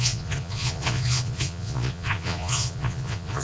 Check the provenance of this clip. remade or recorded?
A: remade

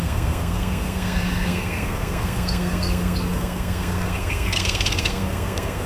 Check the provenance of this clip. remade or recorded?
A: remade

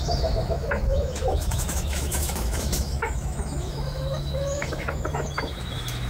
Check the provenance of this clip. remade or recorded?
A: remade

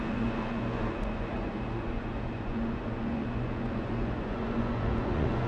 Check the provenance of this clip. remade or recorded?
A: remade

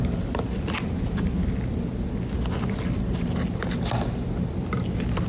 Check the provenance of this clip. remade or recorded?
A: recorded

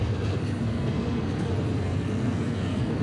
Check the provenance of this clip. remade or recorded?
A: remade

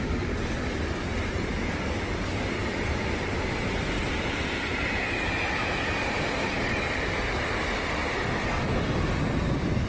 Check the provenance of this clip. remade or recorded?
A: recorded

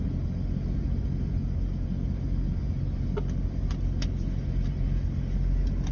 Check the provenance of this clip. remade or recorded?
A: recorded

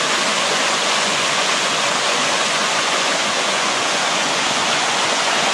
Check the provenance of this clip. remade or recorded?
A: remade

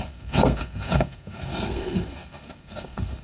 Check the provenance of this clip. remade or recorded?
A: remade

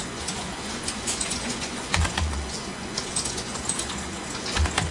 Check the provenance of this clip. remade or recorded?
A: remade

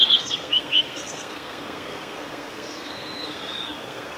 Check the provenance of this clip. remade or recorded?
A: remade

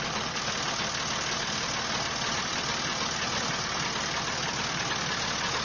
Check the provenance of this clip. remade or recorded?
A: recorded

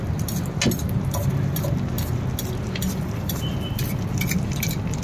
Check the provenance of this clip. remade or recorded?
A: recorded